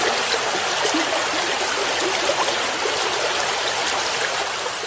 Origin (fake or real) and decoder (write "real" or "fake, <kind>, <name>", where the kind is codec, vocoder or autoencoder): fake, vocoder, BigVGAN v2